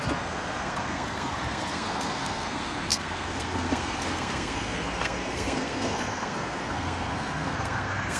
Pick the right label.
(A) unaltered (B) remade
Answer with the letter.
B